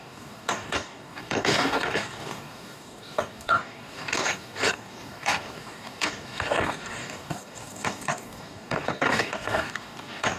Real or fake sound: fake